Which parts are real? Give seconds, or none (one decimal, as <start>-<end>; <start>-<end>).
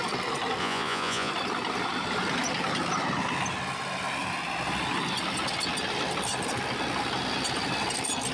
0.0-0.6; 1.3-8.3